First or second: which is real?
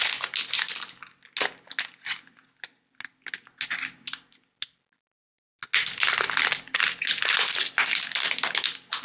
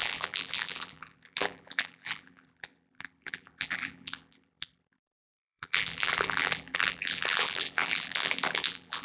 first